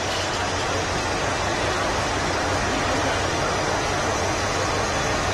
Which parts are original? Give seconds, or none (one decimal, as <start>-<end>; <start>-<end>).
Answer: 0.0-5.3